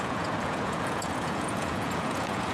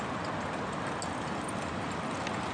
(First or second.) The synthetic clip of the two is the first